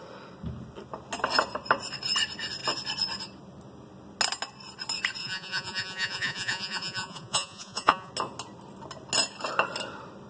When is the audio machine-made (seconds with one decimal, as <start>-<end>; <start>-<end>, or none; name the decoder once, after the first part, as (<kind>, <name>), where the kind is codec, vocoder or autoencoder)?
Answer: 5.2-8.1 (vocoder, Vocos)